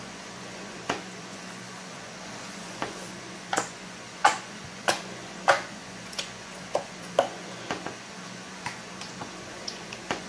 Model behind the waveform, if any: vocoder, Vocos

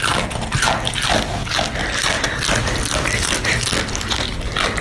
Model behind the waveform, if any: none